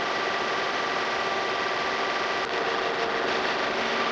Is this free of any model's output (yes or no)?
yes